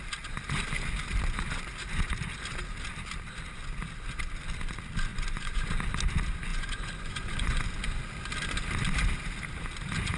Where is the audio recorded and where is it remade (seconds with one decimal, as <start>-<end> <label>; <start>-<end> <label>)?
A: 0.0-5.1 recorded; 5.1-5.7 remade; 5.7-6.5 recorded; 6.5-7.6 remade; 7.6-10.2 recorded